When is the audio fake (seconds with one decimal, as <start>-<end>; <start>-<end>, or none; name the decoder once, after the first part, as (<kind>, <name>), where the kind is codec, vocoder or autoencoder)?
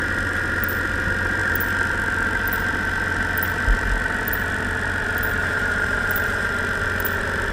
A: 5.4-6.5 (vocoder, BigVGAN v2)